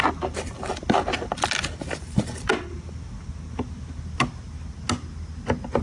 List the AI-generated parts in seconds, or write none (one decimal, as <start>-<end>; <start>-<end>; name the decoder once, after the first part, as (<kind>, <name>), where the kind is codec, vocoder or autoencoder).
none